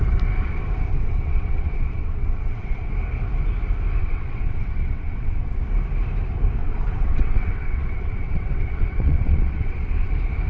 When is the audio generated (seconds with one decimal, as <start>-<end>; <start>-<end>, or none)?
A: 0.9-2.9; 4.0-5.6; 6.6-10.1